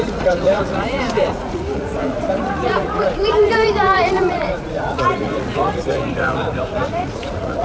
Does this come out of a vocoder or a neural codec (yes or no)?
yes